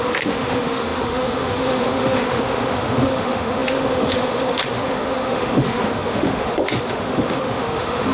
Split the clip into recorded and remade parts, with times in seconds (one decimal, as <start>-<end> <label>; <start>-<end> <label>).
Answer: 0.0-8.1 remade

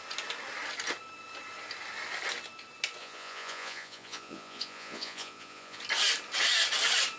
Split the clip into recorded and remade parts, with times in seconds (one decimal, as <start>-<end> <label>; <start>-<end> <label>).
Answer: 0.0-3.0 recorded; 3.0-5.8 remade; 5.8-7.2 recorded

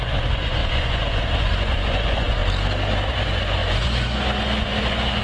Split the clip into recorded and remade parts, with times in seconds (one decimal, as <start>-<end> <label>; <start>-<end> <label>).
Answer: 0.0-2.4 remade; 2.4-3.1 recorded; 3.1-5.2 remade

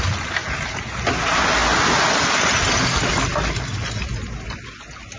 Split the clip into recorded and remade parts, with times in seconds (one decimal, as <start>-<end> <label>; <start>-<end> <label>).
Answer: 0.0-5.2 recorded